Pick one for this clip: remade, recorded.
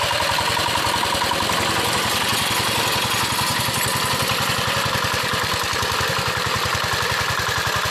recorded